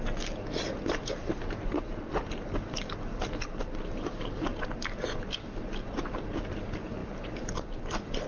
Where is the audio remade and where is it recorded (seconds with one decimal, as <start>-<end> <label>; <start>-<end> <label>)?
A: 0.0-8.3 recorded